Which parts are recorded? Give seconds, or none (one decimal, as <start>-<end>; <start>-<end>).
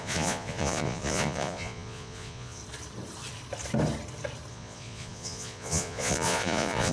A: 2.6-4.5